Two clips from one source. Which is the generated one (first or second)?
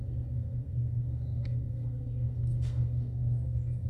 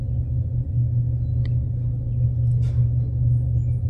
first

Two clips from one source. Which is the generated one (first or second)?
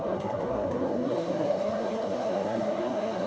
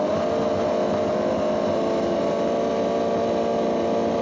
first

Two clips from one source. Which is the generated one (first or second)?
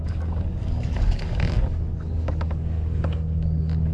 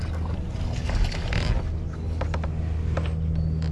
first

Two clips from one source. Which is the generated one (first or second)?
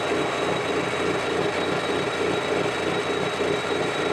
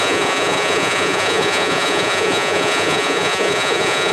second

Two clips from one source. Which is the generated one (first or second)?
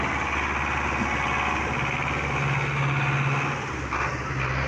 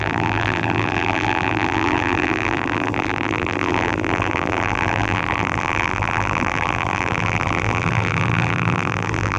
second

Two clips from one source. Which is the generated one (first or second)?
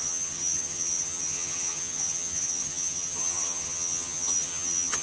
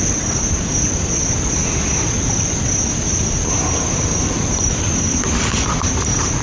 first